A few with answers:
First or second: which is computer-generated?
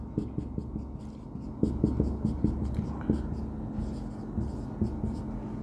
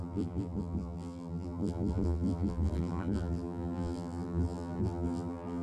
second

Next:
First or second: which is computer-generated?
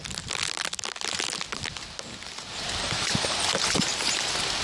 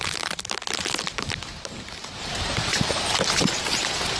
second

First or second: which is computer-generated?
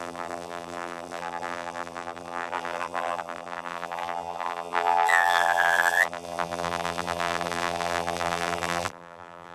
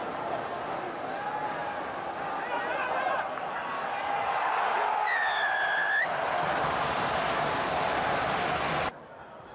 first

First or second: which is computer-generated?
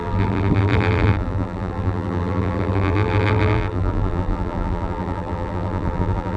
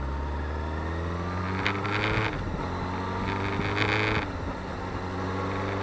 first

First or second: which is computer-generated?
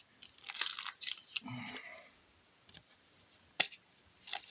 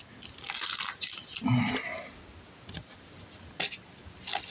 first